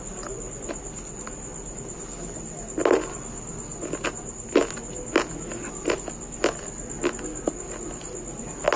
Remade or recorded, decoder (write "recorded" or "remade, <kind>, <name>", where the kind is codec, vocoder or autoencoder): recorded